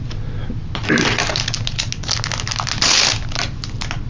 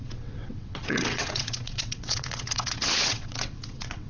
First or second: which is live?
first